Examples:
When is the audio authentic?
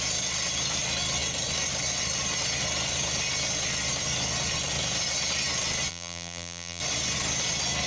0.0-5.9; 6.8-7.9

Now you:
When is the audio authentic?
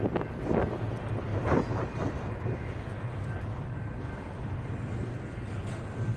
0.0-6.2